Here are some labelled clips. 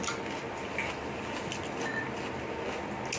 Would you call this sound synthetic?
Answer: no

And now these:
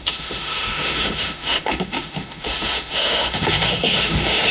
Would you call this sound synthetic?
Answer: yes